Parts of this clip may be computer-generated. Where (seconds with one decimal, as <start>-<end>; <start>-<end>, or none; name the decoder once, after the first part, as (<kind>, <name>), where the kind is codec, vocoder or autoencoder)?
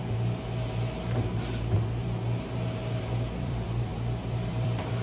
3.0-5.0 (vocoder, BigVGAN v2)